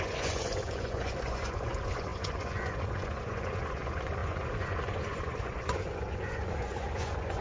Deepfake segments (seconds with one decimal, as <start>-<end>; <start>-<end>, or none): 0.0-7.4